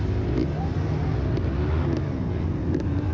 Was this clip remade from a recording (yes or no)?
no